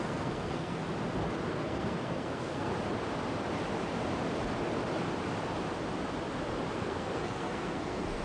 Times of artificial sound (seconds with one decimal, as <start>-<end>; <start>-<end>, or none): 0.0-0.8; 1.5-2.7; 6.7-8.2